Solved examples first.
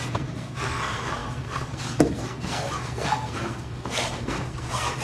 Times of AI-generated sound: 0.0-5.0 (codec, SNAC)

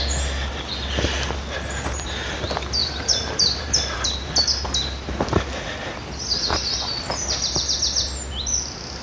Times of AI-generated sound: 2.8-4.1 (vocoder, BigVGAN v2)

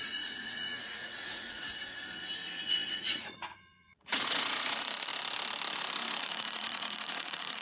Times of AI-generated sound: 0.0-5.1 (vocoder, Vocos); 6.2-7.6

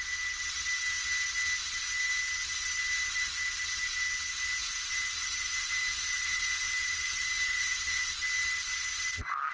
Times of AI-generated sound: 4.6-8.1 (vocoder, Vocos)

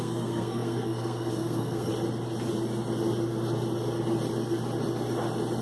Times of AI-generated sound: 0.0-1.9 (codec, SNAC)

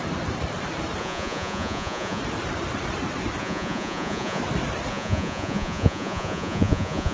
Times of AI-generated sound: 1.0-2.2 (vocoder, Vocos); 3.4-4.4; 4.9-7.1